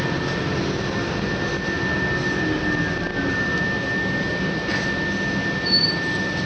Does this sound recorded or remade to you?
recorded